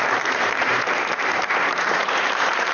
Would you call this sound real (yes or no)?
no